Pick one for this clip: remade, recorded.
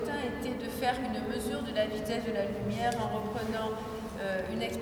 recorded